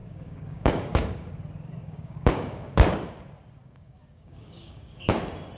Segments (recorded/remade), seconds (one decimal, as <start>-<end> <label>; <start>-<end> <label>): 0.0-1.3 remade; 1.3-1.8 recorded; 1.8-3.1 remade; 3.1-3.6 recorded; 3.6-5.1 remade; 5.1-5.6 recorded